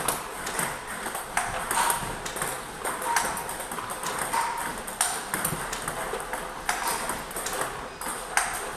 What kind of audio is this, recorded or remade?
recorded